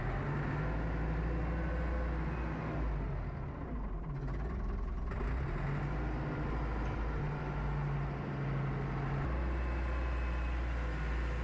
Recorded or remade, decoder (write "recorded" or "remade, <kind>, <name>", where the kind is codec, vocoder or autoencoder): recorded